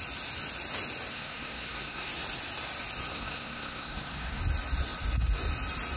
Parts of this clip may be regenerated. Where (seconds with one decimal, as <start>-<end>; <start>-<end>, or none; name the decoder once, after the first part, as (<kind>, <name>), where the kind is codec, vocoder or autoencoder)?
1.1-2.1 (codec, SNAC); 3.1-4.4